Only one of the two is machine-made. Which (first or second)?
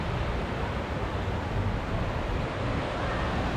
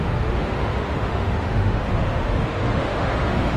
second